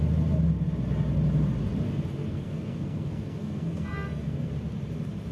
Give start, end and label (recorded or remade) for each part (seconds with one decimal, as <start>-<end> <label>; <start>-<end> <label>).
0.0-2.2 recorded; 2.2-4.5 remade; 4.5-5.3 recorded